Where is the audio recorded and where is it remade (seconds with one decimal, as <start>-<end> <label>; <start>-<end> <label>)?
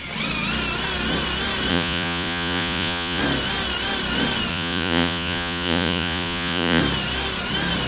0.0-1.7 recorded; 1.7-3.2 remade; 3.2-4.5 recorded; 4.5-6.8 remade; 6.8-7.9 recorded